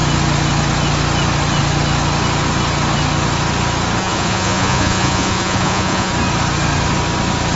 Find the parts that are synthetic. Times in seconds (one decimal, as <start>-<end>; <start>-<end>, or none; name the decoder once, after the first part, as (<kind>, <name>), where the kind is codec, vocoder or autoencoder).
4.0-6.1 (vocoder, Vocos)